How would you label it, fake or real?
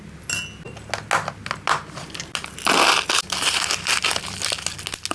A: real